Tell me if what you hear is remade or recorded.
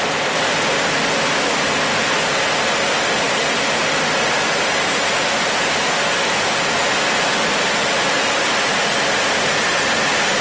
recorded